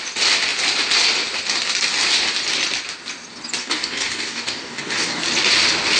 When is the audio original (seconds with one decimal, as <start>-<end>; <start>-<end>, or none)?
0.0-3.6; 5.2-6.0